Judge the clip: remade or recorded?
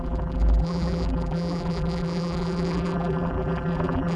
remade